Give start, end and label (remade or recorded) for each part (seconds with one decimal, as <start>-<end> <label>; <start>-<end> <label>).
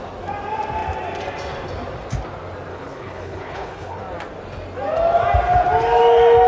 0.0-2.7 recorded; 2.7-4.0 remade; 4.0-6.5 recorded